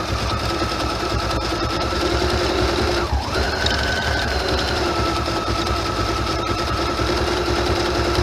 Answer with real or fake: fake